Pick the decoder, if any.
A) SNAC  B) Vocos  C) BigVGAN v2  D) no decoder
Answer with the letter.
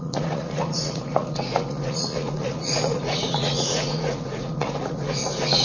B